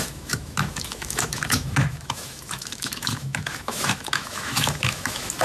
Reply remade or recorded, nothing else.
remade